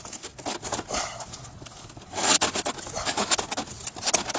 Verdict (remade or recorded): recorded